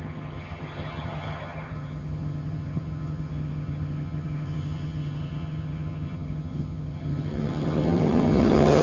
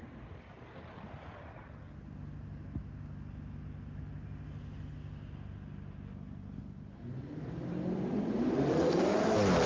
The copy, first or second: first